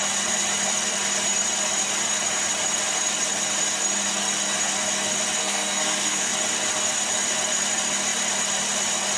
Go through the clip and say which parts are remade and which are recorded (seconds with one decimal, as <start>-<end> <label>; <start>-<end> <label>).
0.0-5.4 recorded; 5.4-6.3 remade; 6.3-9.2 recorded